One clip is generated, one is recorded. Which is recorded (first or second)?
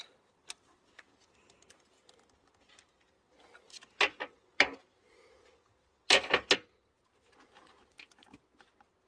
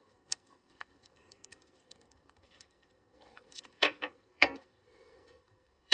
first